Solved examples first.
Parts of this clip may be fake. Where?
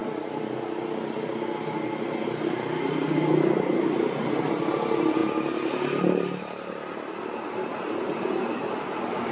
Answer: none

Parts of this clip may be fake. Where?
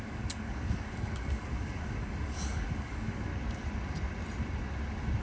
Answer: 0.0-3.3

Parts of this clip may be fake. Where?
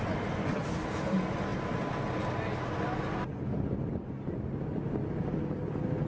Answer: none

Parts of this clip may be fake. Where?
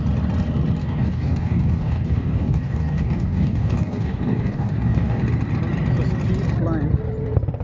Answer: 0.8-5.2